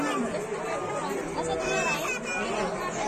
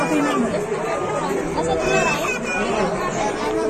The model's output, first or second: second